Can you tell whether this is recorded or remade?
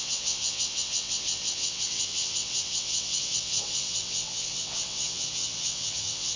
remade